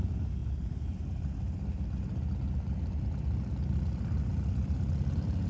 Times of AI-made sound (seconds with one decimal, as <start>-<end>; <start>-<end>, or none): none